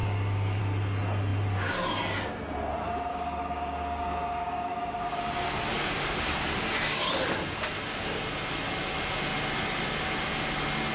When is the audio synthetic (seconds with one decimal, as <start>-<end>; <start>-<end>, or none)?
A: 0.0-0.6; 3.1-7.1